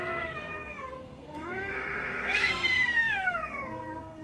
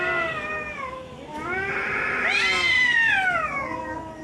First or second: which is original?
second